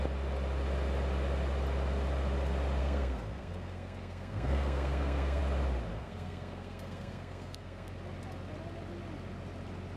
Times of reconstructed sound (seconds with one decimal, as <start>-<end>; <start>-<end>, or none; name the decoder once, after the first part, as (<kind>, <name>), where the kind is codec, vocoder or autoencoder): 2.8-5.4 (codec, SNAC); 5.9-7.9